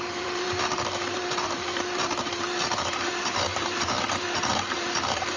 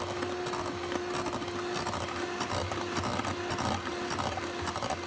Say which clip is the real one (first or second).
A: second